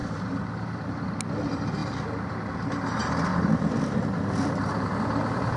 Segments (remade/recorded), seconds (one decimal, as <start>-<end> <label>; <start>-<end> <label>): 0.0-0.9 remade; 0.9-3.3 recorded; 3.3-5.0 remade; 5.0-5.6 recorded